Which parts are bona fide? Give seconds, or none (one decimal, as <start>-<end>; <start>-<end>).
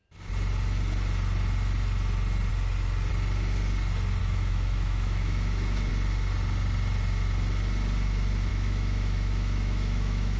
0.0-4.2; 5.9-8.5